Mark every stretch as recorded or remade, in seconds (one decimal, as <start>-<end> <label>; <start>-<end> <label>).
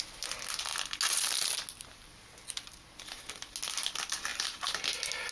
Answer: 0.0-5.3 recorded